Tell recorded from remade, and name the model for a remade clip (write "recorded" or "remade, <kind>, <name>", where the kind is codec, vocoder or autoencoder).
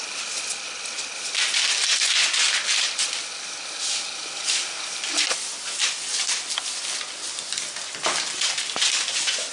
recorded